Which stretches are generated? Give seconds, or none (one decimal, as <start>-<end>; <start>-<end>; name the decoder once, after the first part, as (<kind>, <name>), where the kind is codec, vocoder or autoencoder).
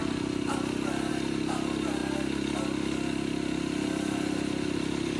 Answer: none